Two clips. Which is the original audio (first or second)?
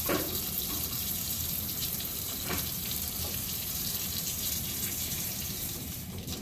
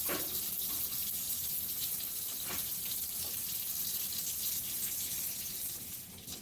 second